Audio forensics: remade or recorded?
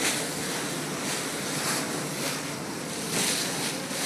recorded